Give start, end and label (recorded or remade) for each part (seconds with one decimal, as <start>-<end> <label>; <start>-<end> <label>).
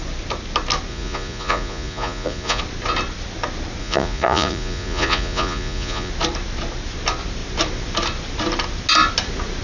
0.0-0.9 recorded; 0.9-2.6 remade; 2.6-3.8 recorded; 3.8-6.1 remade; 6.1-9.6 recorded